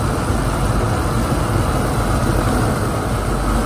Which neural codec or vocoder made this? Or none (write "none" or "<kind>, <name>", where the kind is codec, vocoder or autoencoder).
none